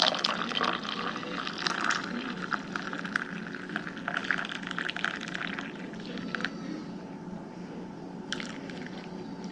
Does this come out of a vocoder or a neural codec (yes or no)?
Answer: no